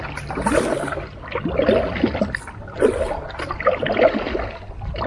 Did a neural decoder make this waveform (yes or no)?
no